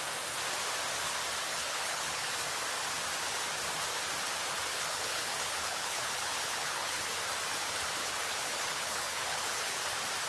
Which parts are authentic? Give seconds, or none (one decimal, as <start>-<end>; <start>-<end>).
0.0-1.5; 2.3-4.7; 7.1-8.0; 9.8-10.3